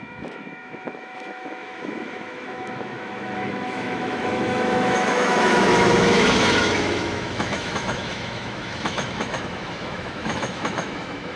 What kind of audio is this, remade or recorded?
remade